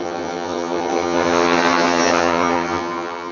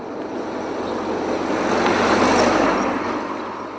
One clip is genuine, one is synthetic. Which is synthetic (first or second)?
first